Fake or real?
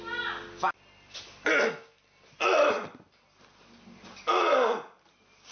real